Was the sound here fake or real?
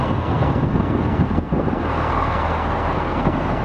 fake